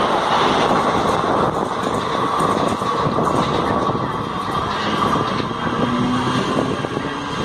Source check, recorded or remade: recorded